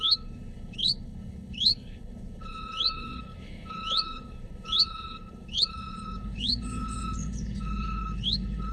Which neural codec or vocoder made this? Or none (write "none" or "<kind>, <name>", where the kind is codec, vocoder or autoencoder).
codec, HILCodec